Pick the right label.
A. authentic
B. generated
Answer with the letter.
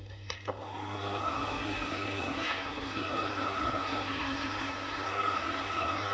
B